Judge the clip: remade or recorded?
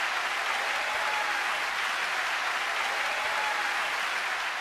recorded